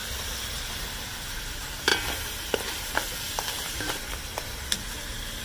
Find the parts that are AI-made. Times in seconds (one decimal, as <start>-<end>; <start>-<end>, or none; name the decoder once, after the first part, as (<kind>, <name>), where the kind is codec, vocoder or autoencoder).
0.8-5.4 (vocoder, BigVGAN v2)